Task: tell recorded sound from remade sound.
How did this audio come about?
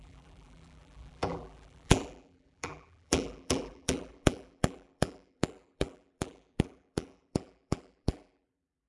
remade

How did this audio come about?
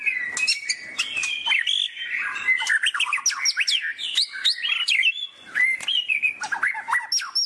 recorded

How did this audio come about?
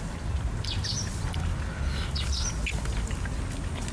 recorded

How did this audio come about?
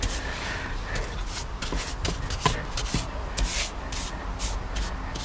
recorded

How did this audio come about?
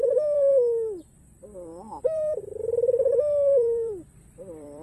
remade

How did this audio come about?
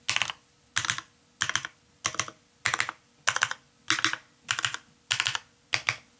recorded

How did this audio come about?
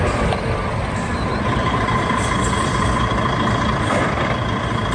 remade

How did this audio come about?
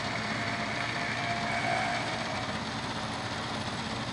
remade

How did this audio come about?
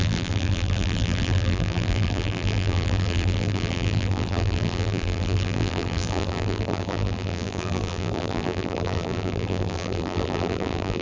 remade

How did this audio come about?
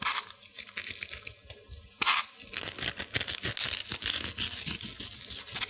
recorded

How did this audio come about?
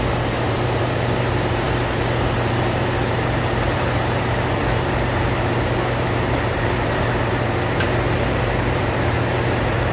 remade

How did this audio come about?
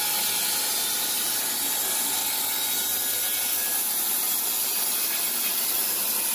recorded